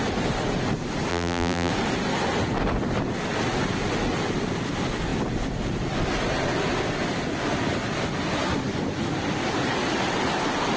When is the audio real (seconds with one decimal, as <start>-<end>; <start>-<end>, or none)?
0.0-1.1; 1.7-10.8